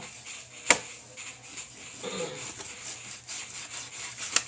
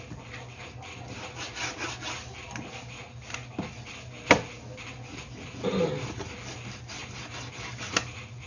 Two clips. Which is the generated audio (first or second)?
second